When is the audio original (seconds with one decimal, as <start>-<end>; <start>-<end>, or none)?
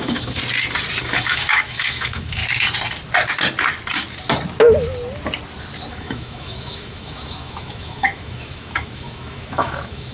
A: 0.4-1.0; 2.4-5.9